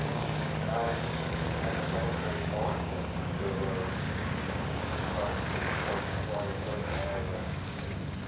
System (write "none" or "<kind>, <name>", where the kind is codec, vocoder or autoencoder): codec, DAC